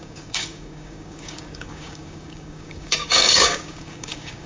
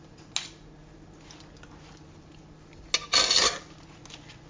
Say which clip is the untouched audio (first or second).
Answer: second